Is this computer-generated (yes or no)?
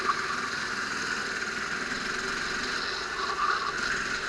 no